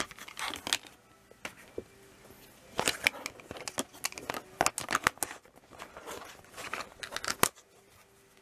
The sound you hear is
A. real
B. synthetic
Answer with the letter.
A